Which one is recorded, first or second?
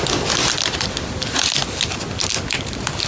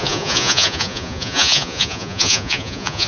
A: first